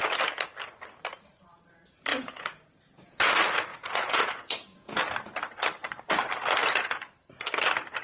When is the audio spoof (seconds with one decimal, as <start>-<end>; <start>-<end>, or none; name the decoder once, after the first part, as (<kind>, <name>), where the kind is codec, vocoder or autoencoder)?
2.1-3.3 (vocoder, Vocos); 3.7-5.0